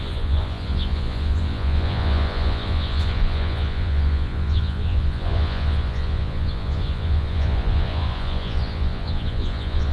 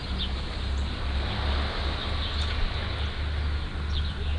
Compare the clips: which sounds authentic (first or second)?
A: second